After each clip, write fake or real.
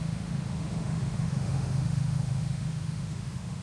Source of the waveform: fake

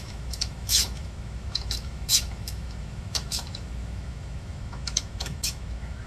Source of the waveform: fake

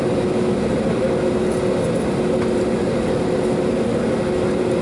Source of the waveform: real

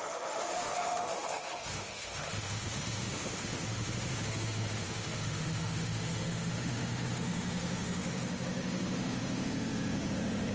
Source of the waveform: fake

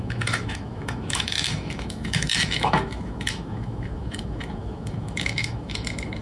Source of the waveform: fake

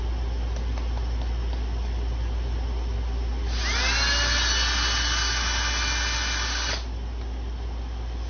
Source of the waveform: real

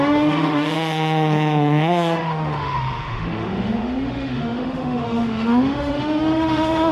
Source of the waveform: fake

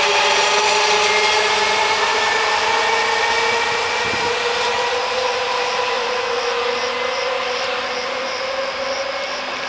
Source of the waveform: real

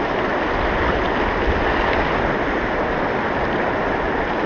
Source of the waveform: real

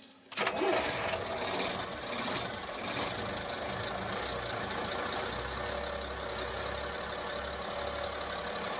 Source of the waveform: real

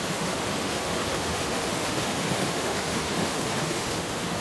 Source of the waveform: fake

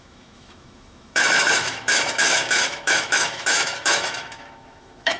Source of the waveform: fake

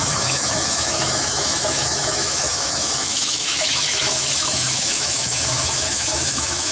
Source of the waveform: fake